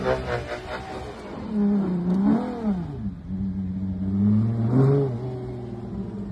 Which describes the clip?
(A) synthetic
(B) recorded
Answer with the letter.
B